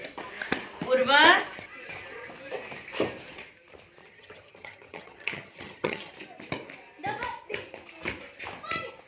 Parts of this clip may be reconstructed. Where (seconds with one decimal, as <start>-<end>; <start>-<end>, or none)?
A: 4.0-6.1